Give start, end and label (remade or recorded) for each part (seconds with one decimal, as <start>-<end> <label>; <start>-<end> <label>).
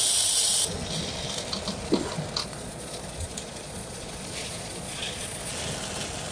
0.0-2.4 recorded; 2.4-5.5 remade; 5.5-6.3 recorded